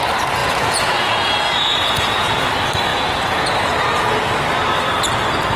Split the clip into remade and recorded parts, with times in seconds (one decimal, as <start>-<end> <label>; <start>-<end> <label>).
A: 0.0-0.4 recorded; 0.4-2.5 remade; 2.5-2.9 recorded; 2.9-3.5 remade; 3.5-5.6 recorded